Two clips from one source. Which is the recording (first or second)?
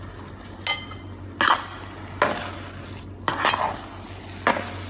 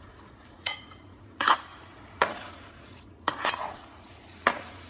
first